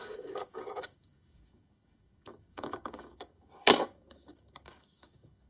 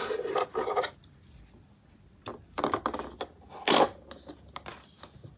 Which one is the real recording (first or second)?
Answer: second